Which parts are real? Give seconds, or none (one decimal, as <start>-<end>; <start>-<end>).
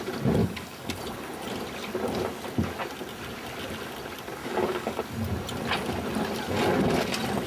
0.0-0.4; 1.0-4.4; 5.0-7.5